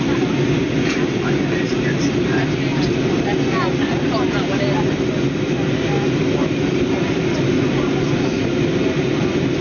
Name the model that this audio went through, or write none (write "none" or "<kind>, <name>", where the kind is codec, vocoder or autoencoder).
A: none